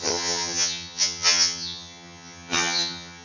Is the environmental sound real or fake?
fake